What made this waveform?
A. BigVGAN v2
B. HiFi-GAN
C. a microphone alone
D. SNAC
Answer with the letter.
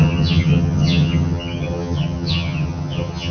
B